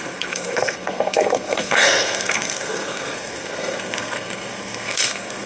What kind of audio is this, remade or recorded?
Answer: remade